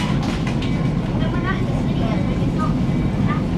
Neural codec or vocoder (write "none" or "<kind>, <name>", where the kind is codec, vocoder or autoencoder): none